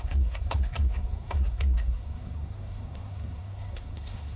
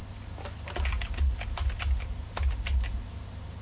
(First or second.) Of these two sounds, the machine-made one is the first